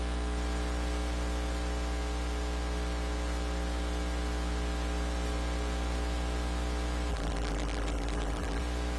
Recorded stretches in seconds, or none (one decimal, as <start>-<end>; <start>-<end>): 0.0-7.1; 8.6-9.0